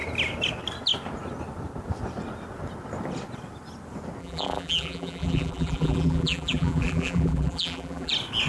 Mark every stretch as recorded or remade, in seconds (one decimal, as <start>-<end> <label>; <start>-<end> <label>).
0.0-4.2 recorded; 4.2-8.1 remade; 8.1-8.5 recorded